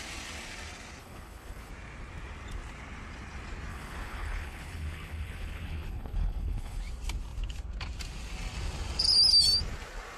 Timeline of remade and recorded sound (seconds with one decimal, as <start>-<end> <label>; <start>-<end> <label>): 0.0-1.0 recorded; 1.0-1.7 remade; 1.7-3.7 recorded; 3.7-6.8 remade; 6.8-10.2 recorded